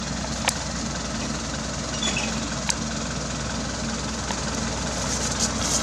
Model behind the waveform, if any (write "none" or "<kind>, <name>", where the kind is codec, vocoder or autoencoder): none